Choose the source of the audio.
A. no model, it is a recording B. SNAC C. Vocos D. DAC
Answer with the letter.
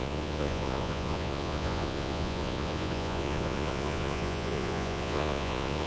C